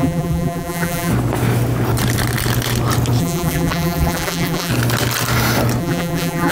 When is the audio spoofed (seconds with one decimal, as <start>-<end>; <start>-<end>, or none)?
0.0-1.1; 3.2-4.7; 5.8-6.5